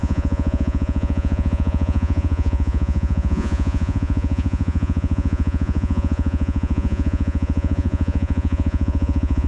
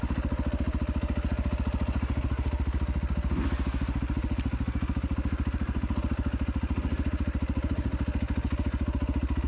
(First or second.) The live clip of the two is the second